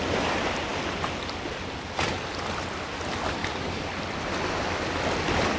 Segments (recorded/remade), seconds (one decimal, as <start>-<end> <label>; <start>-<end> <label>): 0.0-3.4 recorded; 3.4-3.9 remade; 3.9-5.6 recorded